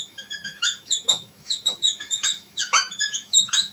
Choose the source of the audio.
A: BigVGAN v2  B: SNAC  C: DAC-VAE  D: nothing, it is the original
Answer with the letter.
C